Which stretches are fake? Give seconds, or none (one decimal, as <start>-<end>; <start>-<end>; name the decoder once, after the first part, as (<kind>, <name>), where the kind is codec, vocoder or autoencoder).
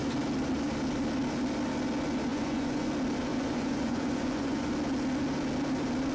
2.3-2.9 (vocoder, Vocos); 3.3-4.7